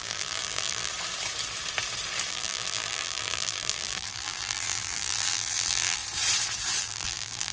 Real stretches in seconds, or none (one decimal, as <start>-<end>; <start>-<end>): 0.9-2.3; 6.0-6.8